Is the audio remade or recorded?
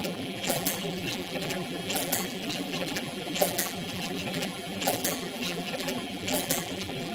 remade